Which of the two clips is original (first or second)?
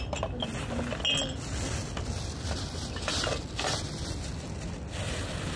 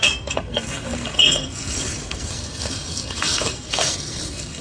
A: first